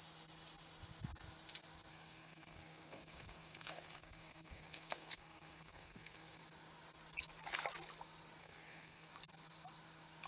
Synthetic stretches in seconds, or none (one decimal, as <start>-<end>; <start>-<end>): 1.9-6.4; 8.4-9.1